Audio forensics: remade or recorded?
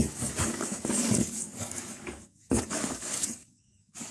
remade